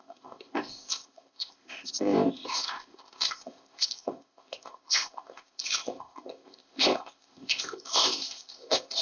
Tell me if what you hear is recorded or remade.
remade